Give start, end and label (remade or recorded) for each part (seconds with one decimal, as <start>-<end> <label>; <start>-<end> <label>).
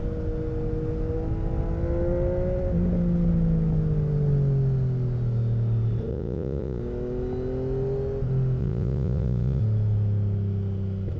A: 0.0-6.1 recorded; 6.1-6.8 remade; 6.8-8.6 recorded; 8.6-9.6 remade; 9.6-11.2 recorded